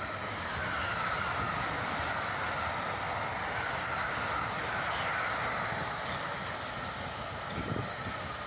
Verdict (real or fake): real